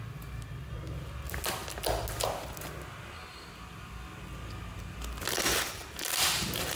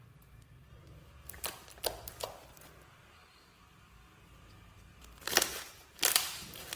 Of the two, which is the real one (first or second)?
first